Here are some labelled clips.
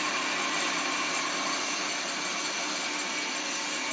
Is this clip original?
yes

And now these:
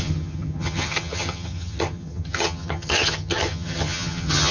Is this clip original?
no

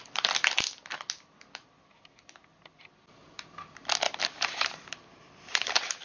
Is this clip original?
yes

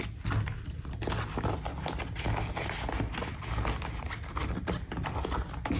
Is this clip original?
yes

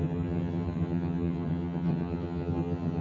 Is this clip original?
no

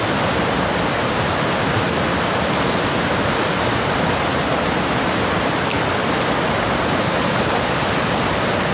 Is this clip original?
yes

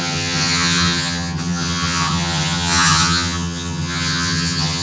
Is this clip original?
no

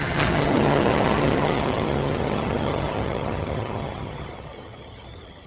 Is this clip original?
no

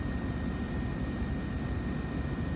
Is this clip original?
yes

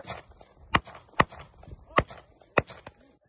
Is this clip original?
yes